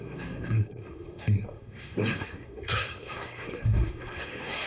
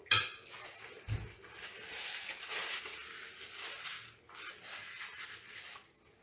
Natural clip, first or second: second